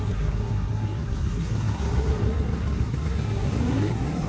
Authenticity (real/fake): fake